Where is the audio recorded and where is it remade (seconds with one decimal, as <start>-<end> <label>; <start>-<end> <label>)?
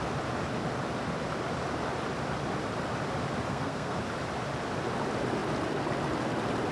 0.0-3.5 recorded; 3.5-4.0 remade; 4.0-6.7 recorded